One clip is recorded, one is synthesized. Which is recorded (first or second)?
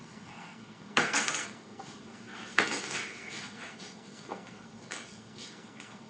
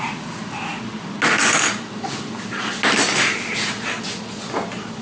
second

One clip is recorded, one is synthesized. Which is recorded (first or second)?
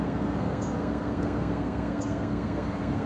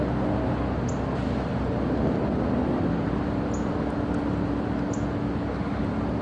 second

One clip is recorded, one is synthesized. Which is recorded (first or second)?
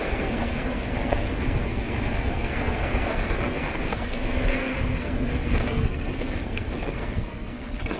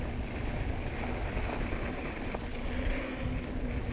second